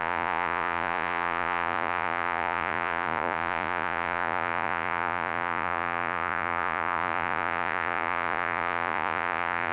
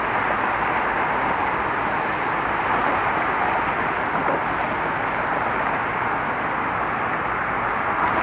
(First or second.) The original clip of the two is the second